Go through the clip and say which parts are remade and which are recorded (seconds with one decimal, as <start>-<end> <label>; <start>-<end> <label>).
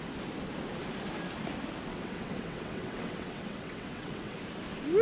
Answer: 0.0-1.9 recorded; 1.9-4.4 remade; 4.4-5.0 recorded